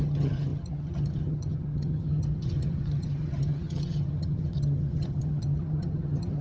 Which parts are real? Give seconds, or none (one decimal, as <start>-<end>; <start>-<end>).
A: none